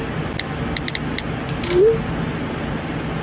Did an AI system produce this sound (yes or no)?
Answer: no